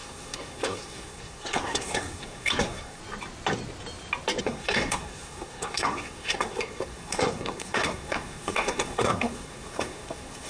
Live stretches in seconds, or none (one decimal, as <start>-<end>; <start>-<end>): 3.0-4.4